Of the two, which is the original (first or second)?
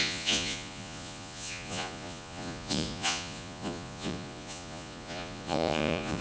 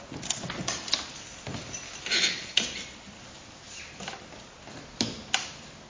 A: second